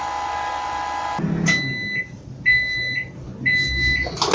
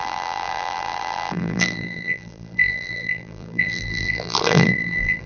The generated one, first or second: second